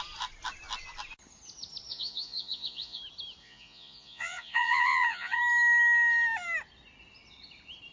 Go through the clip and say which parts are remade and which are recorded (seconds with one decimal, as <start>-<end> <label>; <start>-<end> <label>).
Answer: 0.0-1.9 recorded; 1.9-3.0 remade; 3.0-3.4 recorded; 3.4-5.4 remade; 5.4-7.9 recorded